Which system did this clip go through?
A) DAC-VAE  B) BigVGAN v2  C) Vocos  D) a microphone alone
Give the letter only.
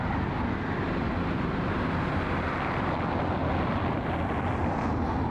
D